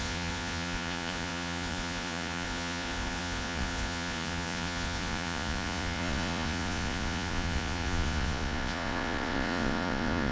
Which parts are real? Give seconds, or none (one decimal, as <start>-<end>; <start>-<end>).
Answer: none

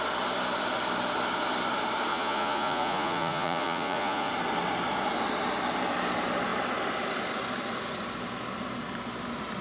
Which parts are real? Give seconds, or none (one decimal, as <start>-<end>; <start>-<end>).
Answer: 0.0-2.1; 4.3-9.6

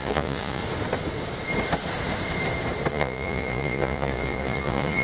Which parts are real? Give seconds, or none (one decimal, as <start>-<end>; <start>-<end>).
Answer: 0.6-2.9